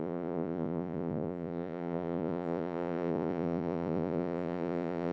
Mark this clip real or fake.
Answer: fake